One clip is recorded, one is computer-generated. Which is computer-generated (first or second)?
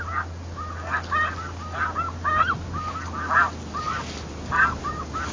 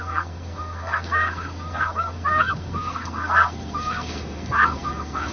second